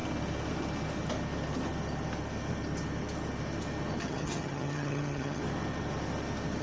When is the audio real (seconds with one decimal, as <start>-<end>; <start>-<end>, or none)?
0.0-4.0; 5.4-6.6